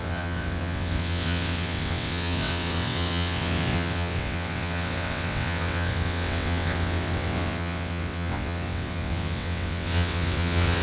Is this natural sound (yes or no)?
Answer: no